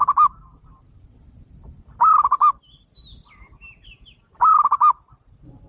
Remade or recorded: recorded